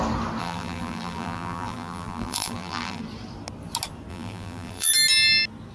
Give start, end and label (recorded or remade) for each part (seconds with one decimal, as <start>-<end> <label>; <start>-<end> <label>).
0.0-0.4 recorded; 0.4-3.0 remade; 3.0-4.1 recorded; 4.1-4.9 remade; 4.9-5.7 recorded